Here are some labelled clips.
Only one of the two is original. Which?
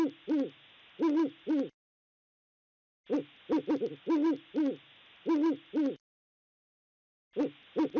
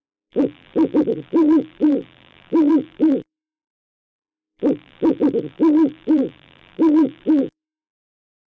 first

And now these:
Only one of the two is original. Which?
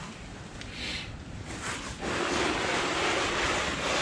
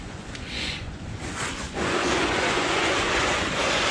first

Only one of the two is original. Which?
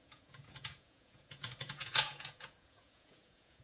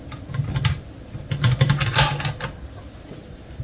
second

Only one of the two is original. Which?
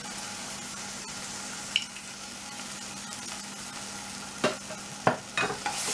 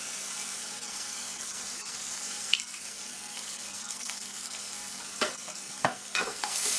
first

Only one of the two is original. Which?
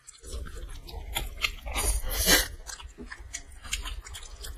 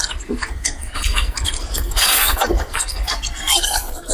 first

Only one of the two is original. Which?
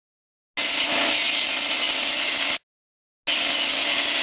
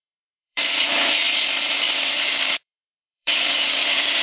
first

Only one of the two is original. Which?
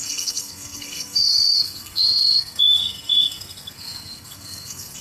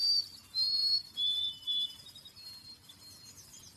second